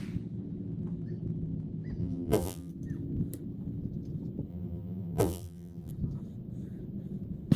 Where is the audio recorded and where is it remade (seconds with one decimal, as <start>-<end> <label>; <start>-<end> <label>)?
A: 0.0-2.0 recorded; 2.0-2.7 remade; 2.7-4.5 recorded; 4.5-5.9 remade; 5.9-7.6 recorded